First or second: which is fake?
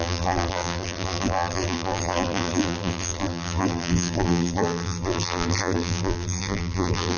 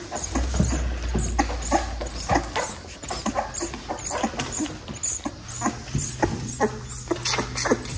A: first